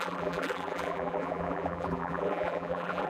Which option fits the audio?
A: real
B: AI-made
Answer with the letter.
B